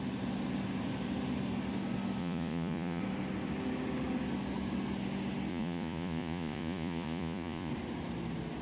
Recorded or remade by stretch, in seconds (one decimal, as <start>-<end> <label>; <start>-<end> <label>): 0.0-2.2 recorded; 2.2-3.0 remade; 3.0-5.5 recorded; 5.5-7.7 remade; 7.7-8.6 recorded